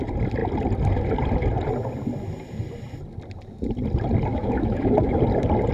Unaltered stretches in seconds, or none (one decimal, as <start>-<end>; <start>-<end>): 0.0-4.3; 5.2-5.7